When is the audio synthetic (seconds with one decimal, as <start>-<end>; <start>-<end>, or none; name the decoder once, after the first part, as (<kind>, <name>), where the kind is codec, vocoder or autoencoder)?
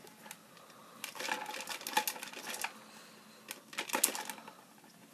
none